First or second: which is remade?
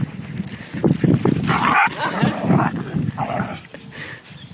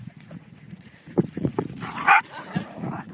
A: second